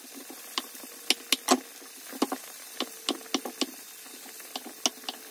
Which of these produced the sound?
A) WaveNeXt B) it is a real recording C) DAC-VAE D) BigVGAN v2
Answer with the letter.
B